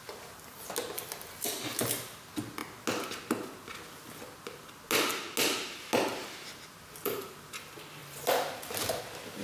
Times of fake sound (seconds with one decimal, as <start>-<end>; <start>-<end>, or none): none